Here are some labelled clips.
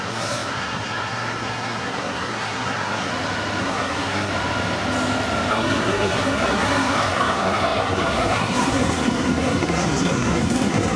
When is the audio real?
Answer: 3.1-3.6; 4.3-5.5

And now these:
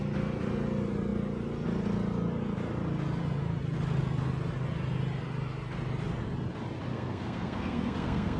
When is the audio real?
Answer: 0.0-6.9

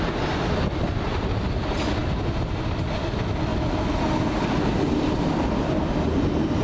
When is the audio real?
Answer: 0.0-6.6

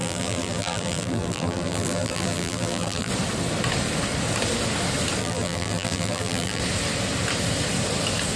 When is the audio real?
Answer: 3.1-5.2; 6.6-8.4

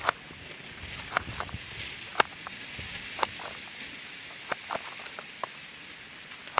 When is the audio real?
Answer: 0.0-6.6

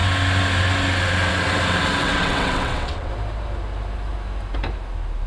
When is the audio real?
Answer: 0.0-2.0; 3.1-5.3

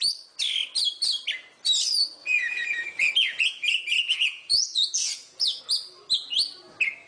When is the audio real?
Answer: 0.0-2.2; 5.6-7.1